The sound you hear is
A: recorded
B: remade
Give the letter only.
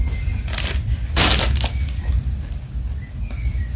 A